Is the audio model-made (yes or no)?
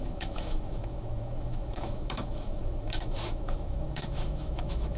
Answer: yes